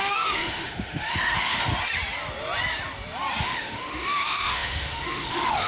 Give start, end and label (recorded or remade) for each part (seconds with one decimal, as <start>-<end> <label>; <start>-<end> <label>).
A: 0.0-1.7 remade; 1.7-3.4 recorded; 3.4-5.7 remade